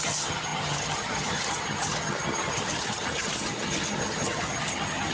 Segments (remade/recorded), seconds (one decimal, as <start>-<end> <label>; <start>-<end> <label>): 0.0-5.1 remade